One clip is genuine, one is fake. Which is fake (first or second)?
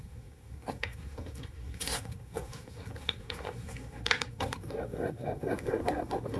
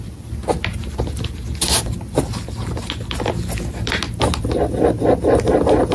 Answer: first